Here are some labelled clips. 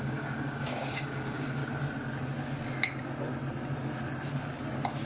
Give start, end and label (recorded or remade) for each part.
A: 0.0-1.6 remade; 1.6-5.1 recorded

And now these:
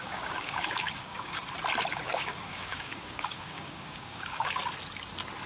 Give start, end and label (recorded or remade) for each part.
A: 0.0-1.4 remade; 1.4-1.9 recorded; 1.9-4.6 remade; 4.6-5.5 recorded

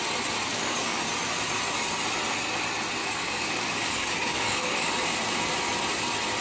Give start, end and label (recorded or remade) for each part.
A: 0.0-0.5 recorded; 0.5-1.0 remade; 1.0-3.0 recorded; 3.0-4.9 remade; 4.9-6.4 recorded

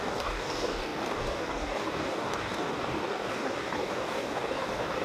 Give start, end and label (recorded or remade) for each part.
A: 0.0-5.0 remade